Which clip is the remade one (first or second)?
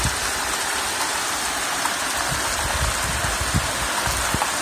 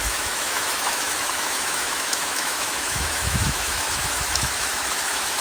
second